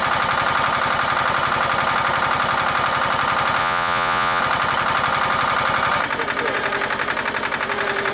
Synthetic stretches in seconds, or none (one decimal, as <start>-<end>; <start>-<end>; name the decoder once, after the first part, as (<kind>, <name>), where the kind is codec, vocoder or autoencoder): 3.6-4.4 (vocoder, Vocos)